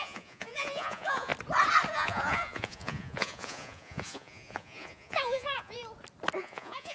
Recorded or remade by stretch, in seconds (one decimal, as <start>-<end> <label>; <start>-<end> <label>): 0.0-1.3 remade; 1.3-1.9 recorded; 1.9-5.8 remade; 5.8-6.4 recorded; 6.4-6.9 remade